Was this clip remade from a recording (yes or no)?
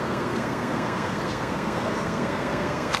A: yes